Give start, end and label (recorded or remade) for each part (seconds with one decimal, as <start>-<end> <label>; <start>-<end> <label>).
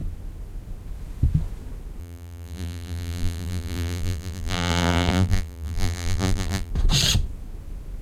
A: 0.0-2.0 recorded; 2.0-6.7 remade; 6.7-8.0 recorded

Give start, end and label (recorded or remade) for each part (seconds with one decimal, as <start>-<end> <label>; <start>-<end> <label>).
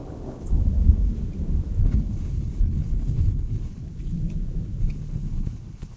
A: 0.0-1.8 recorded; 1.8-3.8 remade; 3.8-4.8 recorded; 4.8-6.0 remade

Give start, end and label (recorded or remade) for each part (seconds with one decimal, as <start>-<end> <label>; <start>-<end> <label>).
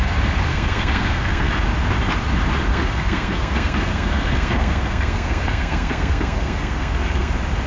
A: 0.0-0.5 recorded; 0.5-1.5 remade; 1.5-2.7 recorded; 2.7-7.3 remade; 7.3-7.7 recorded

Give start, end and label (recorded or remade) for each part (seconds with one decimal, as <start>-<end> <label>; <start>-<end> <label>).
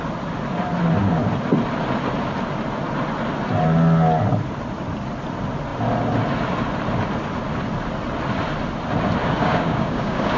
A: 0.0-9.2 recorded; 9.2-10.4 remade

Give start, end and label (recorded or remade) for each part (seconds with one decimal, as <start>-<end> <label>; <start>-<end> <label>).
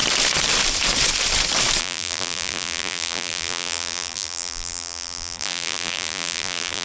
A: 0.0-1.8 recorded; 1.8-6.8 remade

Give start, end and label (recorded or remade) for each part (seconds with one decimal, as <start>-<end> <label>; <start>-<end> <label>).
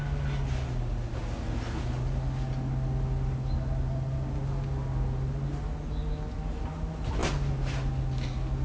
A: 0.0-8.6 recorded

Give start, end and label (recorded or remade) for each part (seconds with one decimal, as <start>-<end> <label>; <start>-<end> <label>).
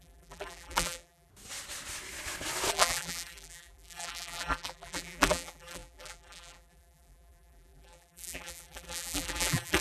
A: 0.0-1.3 remade; 1.3-2.7 recorded; 2.7-9.8 remade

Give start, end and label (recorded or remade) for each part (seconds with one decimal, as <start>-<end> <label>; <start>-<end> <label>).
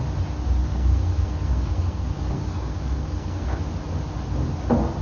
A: 0.0-0.6 recorded; 0.6-3.6 remade; 3.6-5.0 recorded